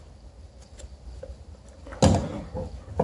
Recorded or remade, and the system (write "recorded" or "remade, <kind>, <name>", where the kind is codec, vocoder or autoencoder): recorded